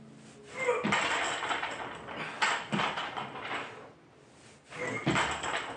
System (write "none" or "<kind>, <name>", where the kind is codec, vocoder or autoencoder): none